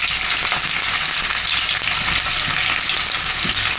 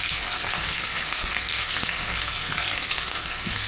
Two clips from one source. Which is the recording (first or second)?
first